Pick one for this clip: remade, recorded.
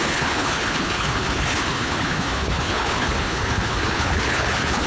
remade